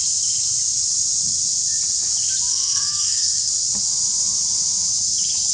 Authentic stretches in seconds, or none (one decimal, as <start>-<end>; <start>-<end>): 0.0-2.5; 3.5-5.5